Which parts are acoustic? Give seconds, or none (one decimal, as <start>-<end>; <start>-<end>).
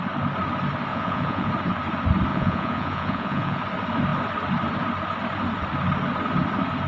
0.0-0.9; 1.5-2.3; 3.6-6.9